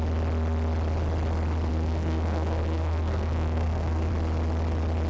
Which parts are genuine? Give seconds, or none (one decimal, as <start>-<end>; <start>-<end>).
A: 0.0-1.7; 4.1-5.1